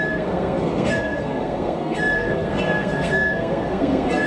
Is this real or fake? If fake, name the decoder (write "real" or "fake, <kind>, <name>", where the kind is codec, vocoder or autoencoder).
fake, codec, SNAC